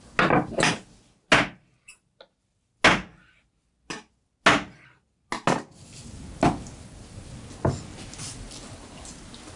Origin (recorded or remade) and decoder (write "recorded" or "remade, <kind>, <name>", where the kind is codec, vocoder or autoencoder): recorded